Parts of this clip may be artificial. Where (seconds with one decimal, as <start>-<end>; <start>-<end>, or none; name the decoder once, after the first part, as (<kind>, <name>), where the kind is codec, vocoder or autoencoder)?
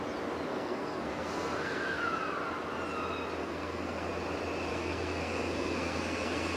0.5-2.0 (codec, SNAC); 3.4-4.1; 4.7-6.6